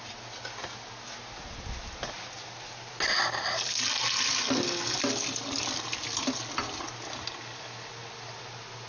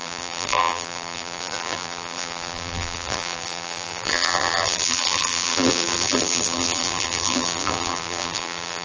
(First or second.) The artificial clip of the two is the second